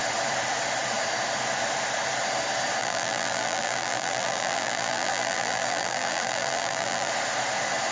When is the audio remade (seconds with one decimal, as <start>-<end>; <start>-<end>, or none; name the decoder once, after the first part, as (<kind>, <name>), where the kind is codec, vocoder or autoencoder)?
2.8-7.1 (vocoder, BigVGAN v2)